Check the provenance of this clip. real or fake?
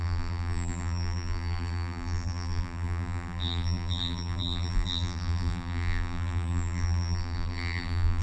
fake